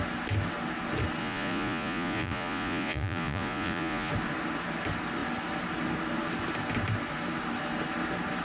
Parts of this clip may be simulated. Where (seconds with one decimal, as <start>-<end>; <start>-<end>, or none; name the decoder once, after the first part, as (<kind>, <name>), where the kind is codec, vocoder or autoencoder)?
1.2-4.1 (vocoder, Vocos)